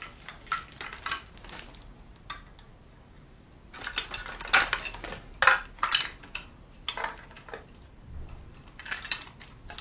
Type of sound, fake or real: real